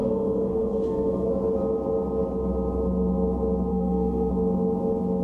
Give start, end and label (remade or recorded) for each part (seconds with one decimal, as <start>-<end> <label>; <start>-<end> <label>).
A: 0.0-1.3 remade; 1.3-3.7 recorded; 3.7-4.3 remade; 4.3-5.2 recorded

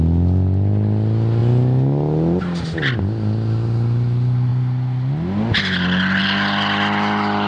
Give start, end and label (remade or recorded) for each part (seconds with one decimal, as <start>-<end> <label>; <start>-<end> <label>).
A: 0.0-7.5 recorded

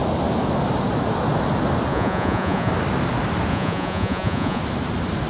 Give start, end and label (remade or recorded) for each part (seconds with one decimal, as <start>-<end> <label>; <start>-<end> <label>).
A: 0.0-1.9 recorded; 1.9-2.7 remade; 2.7-3.5 recorded; 3.5-4.6 remade; 4.6-5.3 recorded

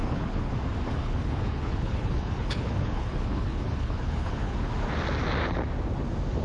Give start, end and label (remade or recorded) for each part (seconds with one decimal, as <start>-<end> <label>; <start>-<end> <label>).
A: 0.0-0.5 remade; 0.5-0.9 recorded; 0.9-4.7 remade; 4.7-6.4 recorded

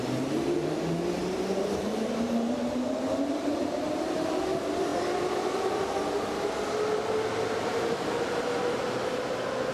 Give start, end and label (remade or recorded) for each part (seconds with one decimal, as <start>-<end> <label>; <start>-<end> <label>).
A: 0.0-1.2 recorded; 1.2-4.3 remade; 4.3-9.7 recorded

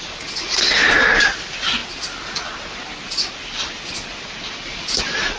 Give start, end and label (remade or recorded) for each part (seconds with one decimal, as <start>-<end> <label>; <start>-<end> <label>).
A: 0.0-5.4 recorded

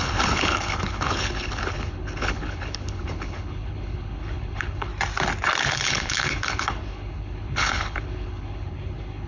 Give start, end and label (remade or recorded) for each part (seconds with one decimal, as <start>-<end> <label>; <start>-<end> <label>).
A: 0.0-4.9 remade; 4.9-5.7 recorded; 5.7-9.3 remade